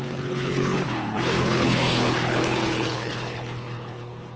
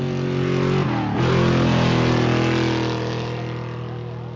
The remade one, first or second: first